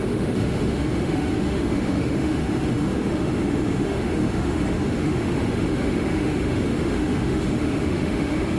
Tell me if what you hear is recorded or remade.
remade